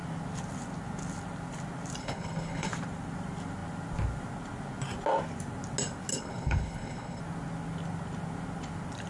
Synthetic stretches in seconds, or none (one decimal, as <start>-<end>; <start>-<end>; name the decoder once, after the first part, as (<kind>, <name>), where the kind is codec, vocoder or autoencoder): 2.0-2.7 (codec, HILCodec); 6.1-7.2